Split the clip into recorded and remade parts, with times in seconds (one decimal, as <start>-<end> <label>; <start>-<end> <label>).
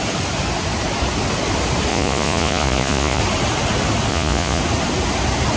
0.0-1.9 recorded; 1.9-3.2 remade; 3.2-4.1 recorded; 4.1-4.6 remade; 4.6-5.6 recorded